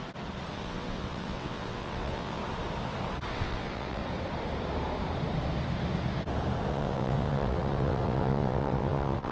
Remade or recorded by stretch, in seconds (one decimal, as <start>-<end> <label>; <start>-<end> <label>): 0.0-0.5 recorded; 0.5-2.4 remade; 2.4-3.3 recorded; 3.3-4.0 remade; 4.0-6.7 recorded; 6.7-9.3 remade